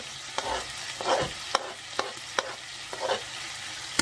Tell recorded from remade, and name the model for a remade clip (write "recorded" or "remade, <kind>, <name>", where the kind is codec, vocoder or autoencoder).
recorded